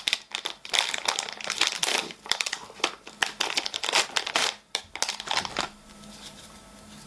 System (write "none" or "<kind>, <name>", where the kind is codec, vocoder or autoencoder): none